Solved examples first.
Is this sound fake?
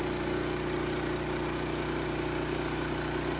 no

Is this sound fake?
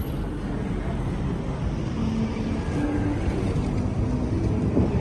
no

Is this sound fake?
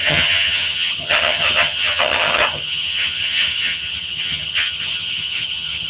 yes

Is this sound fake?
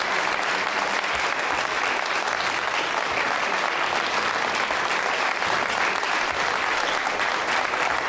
no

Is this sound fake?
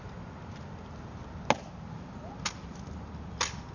no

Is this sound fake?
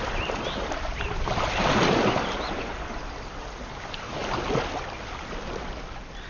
no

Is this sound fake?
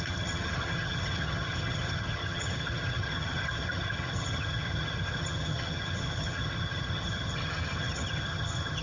yes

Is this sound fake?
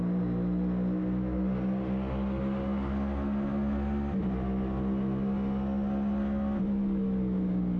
no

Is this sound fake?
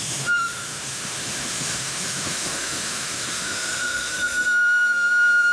yes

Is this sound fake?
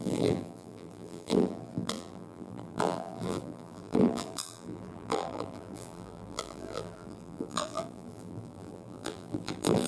yes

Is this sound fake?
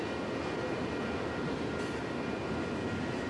no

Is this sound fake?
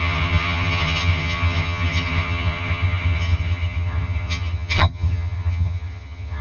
yes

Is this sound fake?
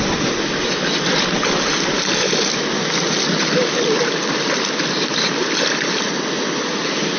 no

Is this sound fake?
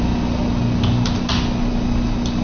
no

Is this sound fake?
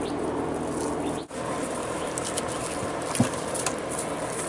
no